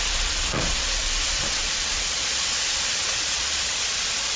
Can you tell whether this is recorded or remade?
remade